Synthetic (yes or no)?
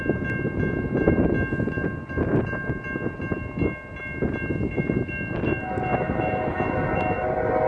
no